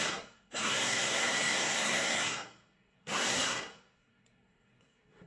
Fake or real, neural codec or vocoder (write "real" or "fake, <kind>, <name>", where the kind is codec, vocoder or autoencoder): fake, codec, SNAC